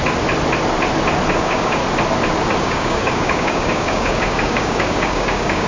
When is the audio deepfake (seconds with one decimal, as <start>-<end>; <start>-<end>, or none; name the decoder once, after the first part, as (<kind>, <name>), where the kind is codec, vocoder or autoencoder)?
1.3-1.8 (codec, DAC); 2.6-5.7